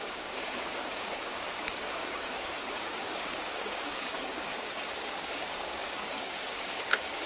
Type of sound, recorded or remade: remade